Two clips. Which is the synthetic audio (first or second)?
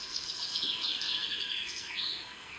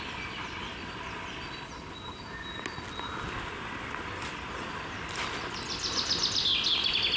first